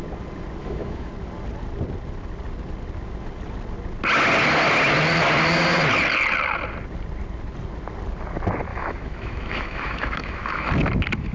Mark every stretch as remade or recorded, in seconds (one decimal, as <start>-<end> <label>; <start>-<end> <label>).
0.0-0.6 recorded; 0.6-1.1 remade; 1.1-8.7 recorded; 8.7-10.7 remade; 10.7-11.3 recorded